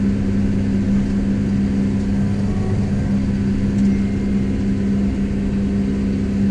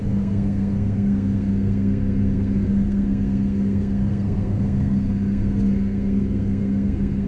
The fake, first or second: second